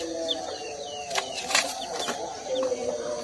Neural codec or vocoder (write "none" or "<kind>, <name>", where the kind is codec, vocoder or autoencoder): none